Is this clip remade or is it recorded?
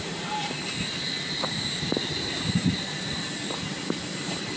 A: remade